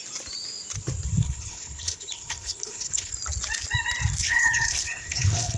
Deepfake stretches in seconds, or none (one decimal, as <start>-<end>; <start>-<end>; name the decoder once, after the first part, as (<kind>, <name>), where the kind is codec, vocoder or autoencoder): 1.1-3.1 (codec, HILCodec); 4.2-5.6